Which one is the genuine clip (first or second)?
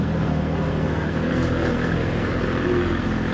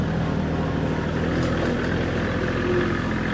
second